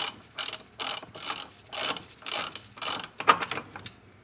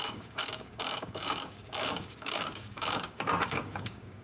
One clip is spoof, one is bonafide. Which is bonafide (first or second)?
first